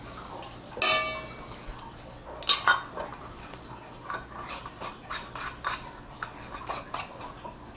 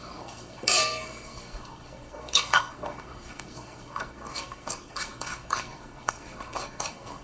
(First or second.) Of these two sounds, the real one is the first